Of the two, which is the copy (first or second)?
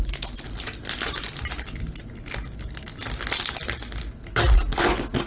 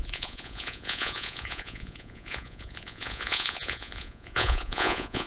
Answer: second